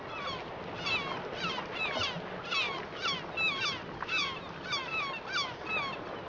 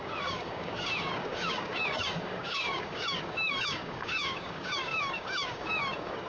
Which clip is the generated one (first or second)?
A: second